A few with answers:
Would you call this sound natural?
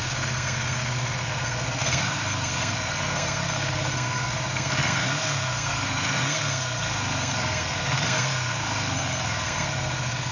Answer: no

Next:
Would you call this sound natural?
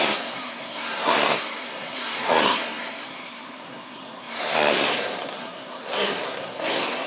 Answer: no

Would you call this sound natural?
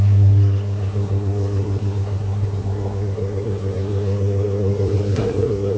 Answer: no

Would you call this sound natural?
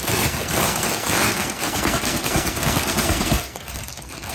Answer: no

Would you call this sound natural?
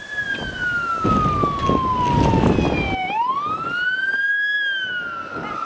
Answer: yes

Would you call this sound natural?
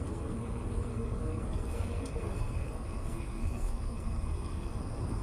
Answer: no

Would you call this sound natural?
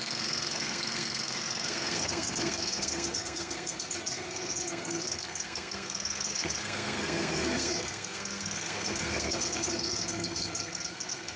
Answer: no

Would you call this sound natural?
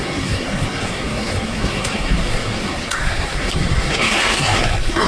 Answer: no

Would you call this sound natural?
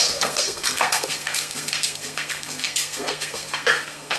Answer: no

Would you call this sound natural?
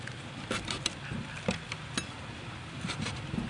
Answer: yes